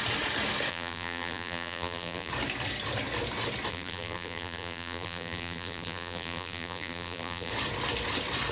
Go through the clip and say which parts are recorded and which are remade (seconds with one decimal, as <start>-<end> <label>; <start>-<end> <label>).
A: 0.0-0.7 recorded; 0.7-2.3 remade; 2.3-3.7 recorded; 3.7-7.5 remade; 7.5-8.5 recorded

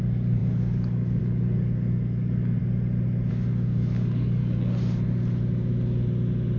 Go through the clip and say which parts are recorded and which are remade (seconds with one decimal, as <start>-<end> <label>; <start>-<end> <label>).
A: 0.0-2.6 remade; 2.6-3.3 recorded; 3.3-4.4 remade; 4.4-6.6 recorded